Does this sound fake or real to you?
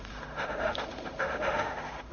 fake